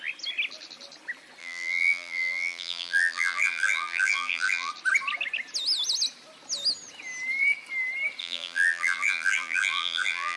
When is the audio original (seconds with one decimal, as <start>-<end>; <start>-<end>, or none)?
0.0-1.4; 4.7-8.2